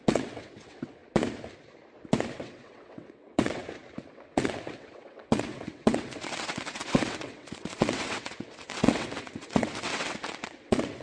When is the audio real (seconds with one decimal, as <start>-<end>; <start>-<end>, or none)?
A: 1.0-2.3; 3.6-4.1